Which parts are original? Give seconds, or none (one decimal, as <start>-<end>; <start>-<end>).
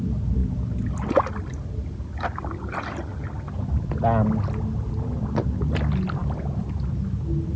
0.0-7.6